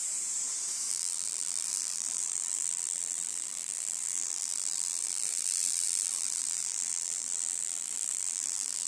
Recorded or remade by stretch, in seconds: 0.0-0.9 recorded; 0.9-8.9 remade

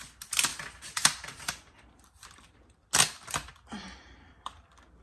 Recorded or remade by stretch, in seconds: 0.0-5.0 recorded

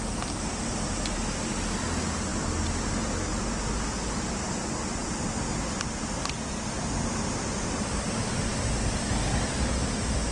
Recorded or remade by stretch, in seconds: 0.0-10.3 recorded

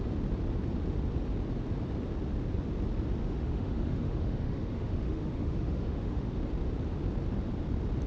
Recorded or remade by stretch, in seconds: 0.0-3.2 recorded; 3.2-6.4 remade; 6.4-8.1 recorded

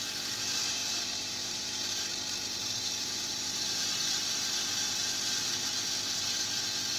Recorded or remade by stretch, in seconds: 0.0-0.8 recorded; 0.8-2.0 remade; 2.0-2.6 recorded; 2.6-3.8 remade; 3.8-7.0 recorded